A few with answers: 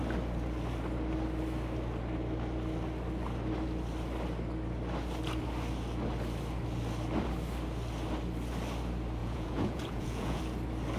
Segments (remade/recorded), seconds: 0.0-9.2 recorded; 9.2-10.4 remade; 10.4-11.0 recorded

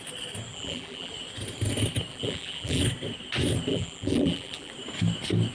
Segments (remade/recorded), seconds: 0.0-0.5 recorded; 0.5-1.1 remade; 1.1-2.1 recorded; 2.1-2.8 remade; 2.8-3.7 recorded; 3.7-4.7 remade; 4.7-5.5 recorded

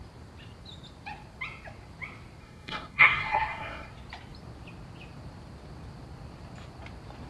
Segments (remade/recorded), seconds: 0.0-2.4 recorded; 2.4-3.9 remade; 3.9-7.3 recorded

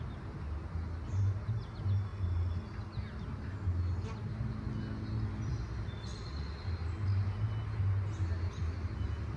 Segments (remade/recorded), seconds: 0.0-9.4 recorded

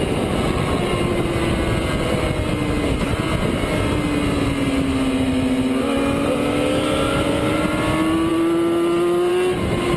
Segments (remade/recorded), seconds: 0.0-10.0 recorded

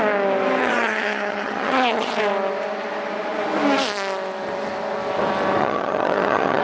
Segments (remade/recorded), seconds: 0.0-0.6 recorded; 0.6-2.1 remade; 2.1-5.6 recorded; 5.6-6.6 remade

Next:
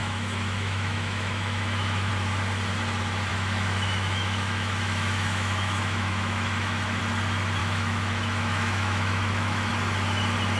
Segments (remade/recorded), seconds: 0.0-2.1 remade; 2.1-3.3 recorded; 3.3-7.0 remade; 7.0-7.6 recorded; 7.6-9.7 remade; 9.7-10.6 recorded